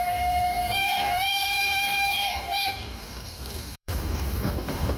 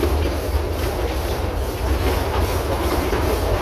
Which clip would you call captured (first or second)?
second